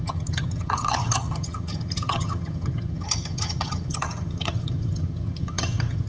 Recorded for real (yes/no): no